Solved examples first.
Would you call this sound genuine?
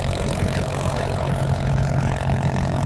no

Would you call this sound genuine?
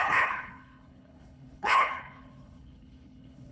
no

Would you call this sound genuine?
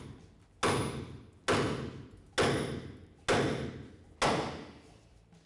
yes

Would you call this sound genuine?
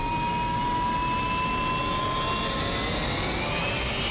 yes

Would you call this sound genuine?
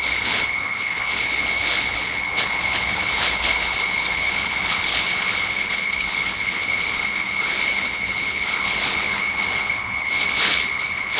no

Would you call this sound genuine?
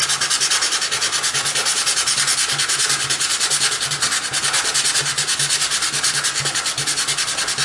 yes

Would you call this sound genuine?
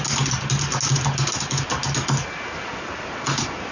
yes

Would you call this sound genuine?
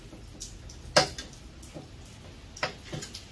yes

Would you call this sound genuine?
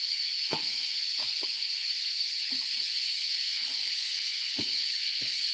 no